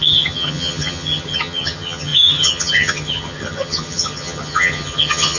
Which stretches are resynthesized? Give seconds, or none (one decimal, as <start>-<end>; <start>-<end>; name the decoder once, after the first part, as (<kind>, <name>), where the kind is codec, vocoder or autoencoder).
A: 0.0-5.4 (vocoder, HiFi-GAN)